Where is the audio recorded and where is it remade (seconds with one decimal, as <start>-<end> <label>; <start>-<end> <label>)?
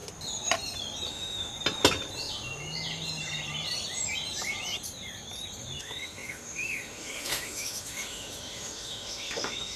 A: 0.0-1.1 recorded; 1.1-1.5 remade; 1.5-5.8 recorded; 5.8-9.8 remade